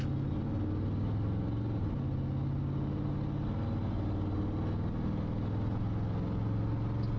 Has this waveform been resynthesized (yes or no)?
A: no